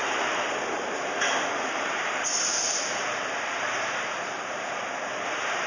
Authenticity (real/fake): fake